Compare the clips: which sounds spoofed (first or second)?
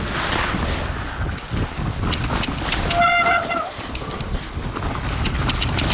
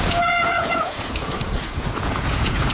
second